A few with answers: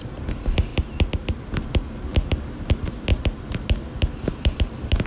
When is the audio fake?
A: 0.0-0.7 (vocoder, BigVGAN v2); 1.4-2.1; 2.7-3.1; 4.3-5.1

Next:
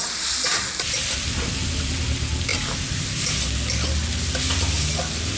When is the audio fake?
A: 2.5-3.2 (vocoder, BigVGAN v2)

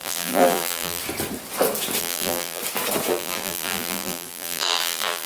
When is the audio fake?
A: 0.0-1.0 (vocoder, BigVGAN v2); 2.0-2.6; 3.1-5.3

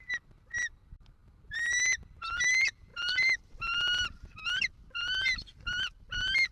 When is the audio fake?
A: none

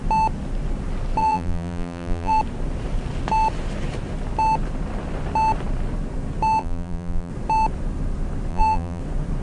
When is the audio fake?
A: 1.2-2.4 (vocoder, BigVGAN v2); 6.6-7.3; 8.5-9.0

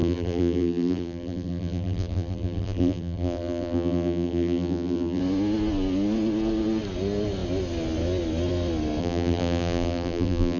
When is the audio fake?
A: 0.0-5.2 (vocoder, BigVGAN v2); 9.0-10.6

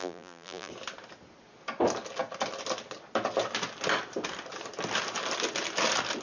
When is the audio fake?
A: 0.0-0.7 (vocoder, BigVGAN v2)